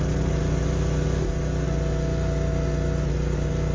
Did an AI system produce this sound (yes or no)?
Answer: no